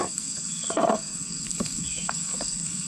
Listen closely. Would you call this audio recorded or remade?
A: remade